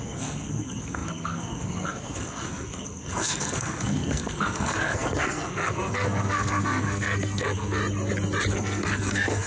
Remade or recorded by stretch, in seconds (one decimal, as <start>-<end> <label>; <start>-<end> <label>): 0.0-7.8 remade; 7.8-8.5 recorded; 8.5-9.5 remade